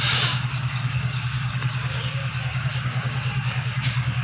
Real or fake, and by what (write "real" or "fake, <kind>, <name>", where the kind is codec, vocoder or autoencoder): fake, codec, DAC